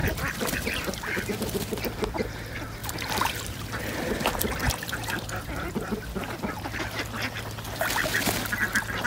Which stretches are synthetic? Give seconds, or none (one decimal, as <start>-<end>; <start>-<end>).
0.0-0.7; 2.8-6.8